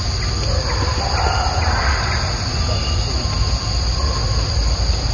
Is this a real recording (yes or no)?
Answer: yes